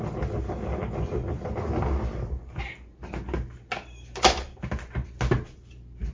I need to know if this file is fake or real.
real